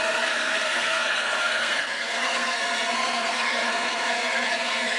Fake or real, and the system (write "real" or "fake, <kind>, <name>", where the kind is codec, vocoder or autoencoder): fake, codec, SNAC